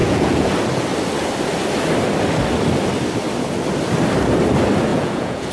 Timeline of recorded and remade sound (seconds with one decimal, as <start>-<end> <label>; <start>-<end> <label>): 0.0-0.5 remade; 0.5-4.9 recorded; 4.9-5.5 remade